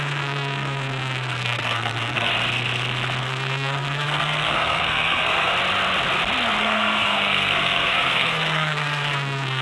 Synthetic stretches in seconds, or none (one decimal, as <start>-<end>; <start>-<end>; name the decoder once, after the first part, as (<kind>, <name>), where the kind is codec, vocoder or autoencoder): 0.0-2.3 (codec, SNAC); 3.2-5.5; 6.6-9.6